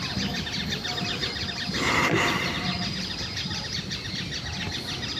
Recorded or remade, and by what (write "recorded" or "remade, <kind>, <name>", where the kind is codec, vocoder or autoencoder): recorded